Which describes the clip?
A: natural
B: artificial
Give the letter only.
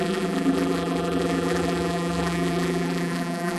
B